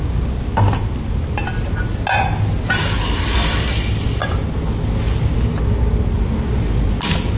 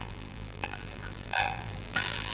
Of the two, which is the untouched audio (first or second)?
first